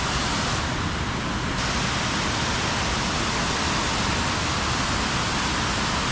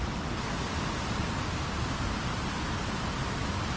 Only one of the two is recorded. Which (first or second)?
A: first